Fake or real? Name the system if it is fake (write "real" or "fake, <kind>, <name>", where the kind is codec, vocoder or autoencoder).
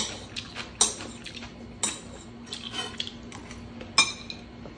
real